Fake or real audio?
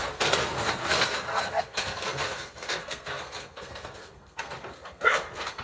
fake